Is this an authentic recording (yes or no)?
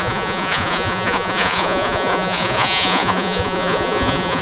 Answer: no